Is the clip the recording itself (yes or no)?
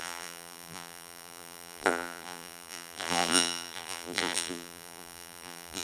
no